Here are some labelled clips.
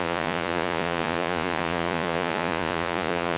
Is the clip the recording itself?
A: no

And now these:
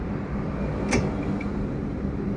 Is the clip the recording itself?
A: yes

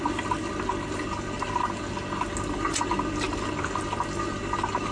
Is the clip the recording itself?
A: yes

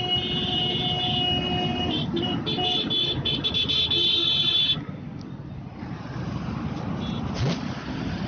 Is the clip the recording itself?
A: yes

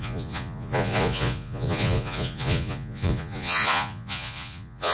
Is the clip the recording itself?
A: no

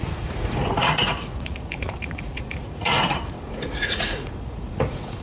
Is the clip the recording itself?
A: no